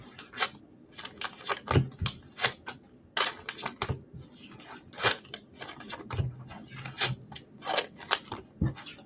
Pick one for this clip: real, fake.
real